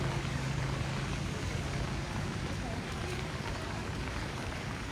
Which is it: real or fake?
fake